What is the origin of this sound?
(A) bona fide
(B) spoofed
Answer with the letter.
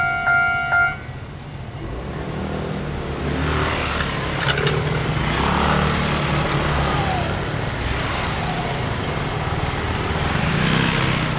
A